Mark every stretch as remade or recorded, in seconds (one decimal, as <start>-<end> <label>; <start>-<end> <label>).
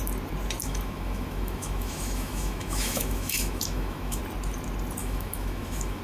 0.0-0.6 recorded; 0.6-4.2 remade; 4.2-5.0 recorded; 5.0-6.0 remade